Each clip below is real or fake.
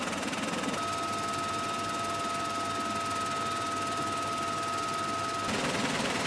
real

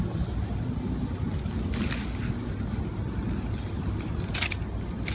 real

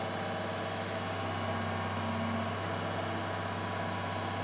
real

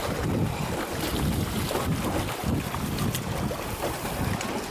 real